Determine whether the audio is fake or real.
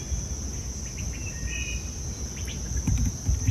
real